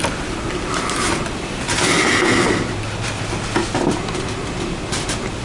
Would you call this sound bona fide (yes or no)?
yes